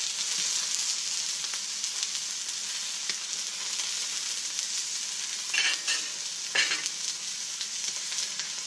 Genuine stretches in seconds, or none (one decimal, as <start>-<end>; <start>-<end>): 0.0-8.7